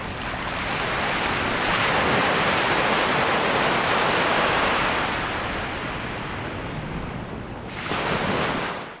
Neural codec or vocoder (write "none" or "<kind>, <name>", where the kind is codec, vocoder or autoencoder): none